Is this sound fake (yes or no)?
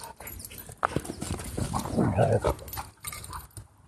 no